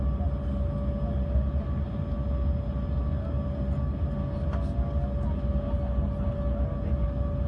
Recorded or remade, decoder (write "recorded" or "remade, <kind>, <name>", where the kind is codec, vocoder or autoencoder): recorded